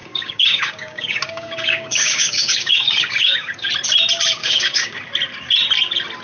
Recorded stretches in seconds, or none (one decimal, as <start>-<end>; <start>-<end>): 3.7-4.4; 5.0-6.2